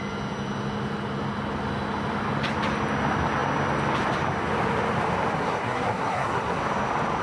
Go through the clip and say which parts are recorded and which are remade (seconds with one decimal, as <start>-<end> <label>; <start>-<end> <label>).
0.0-5.4 recorded; 5.4-6.6 remade; 6.6-7.2 recorded